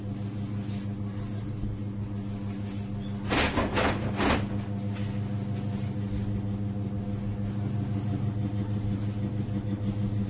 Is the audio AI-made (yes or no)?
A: no